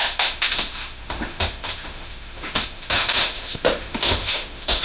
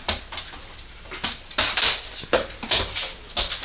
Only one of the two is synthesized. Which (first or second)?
first